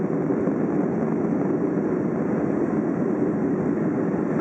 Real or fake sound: real